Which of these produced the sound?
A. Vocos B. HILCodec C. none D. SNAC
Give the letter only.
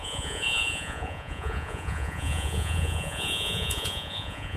A